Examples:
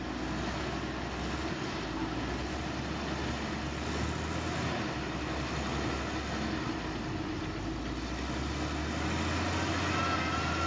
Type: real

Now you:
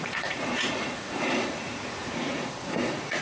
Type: fake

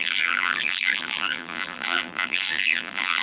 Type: fake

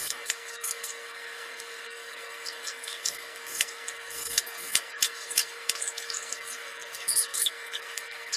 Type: fake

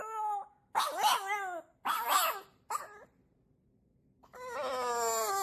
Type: real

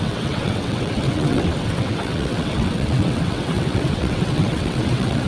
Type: fake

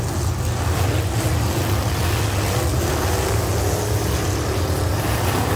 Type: real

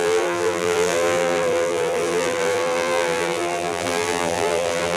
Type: fake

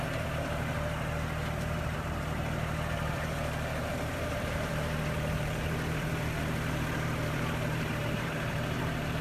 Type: fake